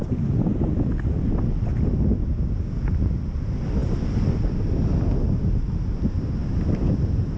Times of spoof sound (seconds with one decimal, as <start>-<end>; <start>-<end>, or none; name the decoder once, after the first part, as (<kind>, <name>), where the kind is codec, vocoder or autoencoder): 2.2-2.8 (codec, DAC)